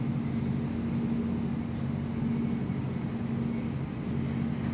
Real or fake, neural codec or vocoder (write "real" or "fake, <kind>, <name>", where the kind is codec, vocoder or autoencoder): real